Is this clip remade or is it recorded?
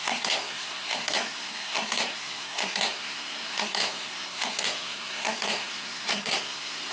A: remade